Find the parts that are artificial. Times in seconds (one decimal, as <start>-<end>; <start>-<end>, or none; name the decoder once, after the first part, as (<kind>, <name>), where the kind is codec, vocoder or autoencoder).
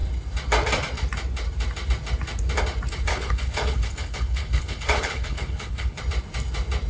3.1-6.0 (codec, HILCodec)